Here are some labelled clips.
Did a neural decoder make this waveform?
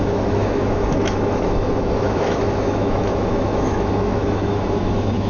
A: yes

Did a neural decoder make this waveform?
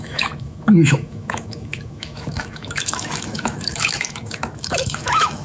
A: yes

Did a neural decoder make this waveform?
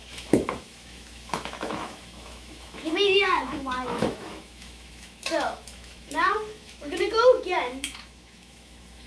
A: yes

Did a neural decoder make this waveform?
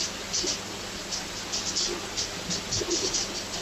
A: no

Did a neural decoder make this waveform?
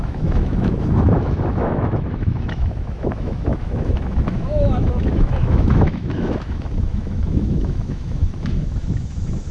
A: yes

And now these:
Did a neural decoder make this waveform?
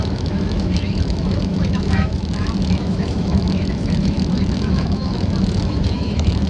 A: yes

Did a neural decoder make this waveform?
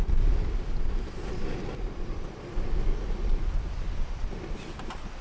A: no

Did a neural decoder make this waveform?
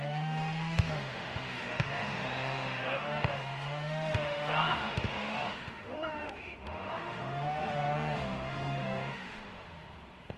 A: yes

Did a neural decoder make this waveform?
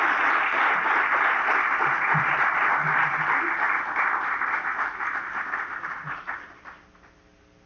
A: no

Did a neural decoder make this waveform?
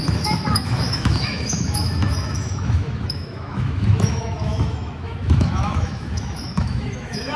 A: yes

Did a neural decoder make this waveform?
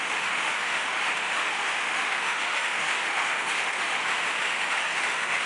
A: yes